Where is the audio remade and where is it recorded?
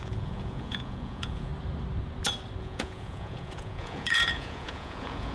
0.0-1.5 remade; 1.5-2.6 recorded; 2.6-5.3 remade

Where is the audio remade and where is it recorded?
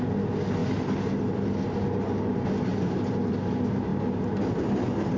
0.0-5.2 recorded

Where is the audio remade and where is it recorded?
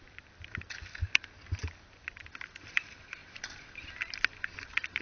0.0-5.0 recorded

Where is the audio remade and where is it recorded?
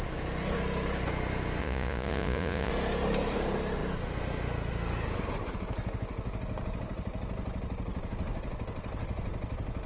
0.0-1.6 recorded; 1.6-2.7 remade; 2.7-9.9 recorded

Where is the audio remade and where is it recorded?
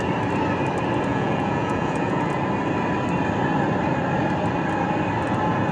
0.0-1.1 recorded; 1.1-2.3 remade; 2.3-5.7 recorded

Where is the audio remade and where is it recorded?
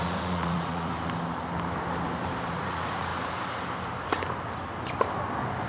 0.0-0.9 remade; 0.9-2.5 recorded; 2.5-3.1 remade; 3.1-5.7 recorded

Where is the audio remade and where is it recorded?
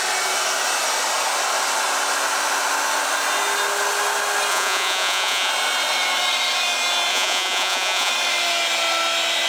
0.0-4.5 recorded; 4.5-5.5 remade; 5.5-7.1 recorded; 7.1-8.1 remade; 8.1-9.5 recorded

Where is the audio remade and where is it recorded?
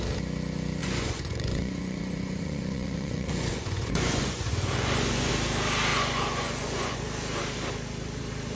0.0-0.8 recorded; 0.8-5.3 remade; 5.3-5.9 recorded; 5.9-7.0 remade; 7.0-8.6 recorded